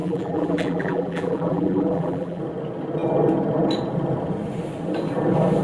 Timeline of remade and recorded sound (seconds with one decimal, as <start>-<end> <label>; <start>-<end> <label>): 0.0-2.4 remade; 2.4-5.6 recorded

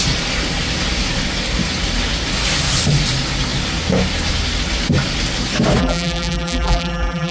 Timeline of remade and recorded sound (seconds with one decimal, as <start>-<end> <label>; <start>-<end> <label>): 0.0-5.8 recorded; 5.8-7.3 remade

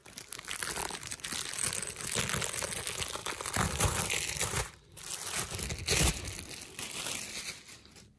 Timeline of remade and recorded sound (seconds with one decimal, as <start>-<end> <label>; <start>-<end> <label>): 0.0-3.2 recorded; 3.2-4.9 remade; 4.9-8.2 recorded

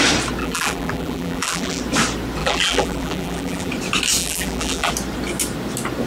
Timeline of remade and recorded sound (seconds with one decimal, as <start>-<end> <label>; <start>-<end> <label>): 0.0-0.4 recorded; 0.4-1.8 remade; 1.8-2.4 recorded; 2.4-3.7 remade; 3.7-4.2 recorded; 4.2-4.9 remade; 4.9-6.1 recorded